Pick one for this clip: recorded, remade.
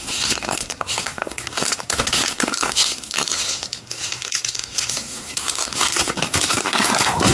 remade